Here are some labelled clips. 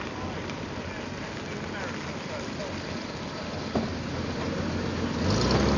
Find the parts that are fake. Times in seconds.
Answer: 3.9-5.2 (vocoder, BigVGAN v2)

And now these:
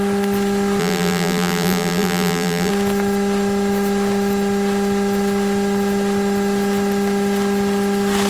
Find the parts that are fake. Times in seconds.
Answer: 0.8-2.7 (vocoder, BigVGAN v2)

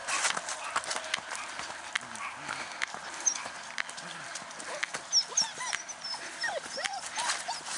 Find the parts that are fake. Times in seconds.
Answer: none